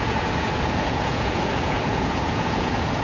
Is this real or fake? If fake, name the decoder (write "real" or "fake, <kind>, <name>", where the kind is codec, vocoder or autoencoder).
fake, vocoder, Vocos